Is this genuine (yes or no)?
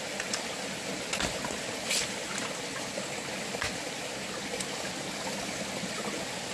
yes